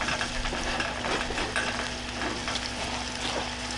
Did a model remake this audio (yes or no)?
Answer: no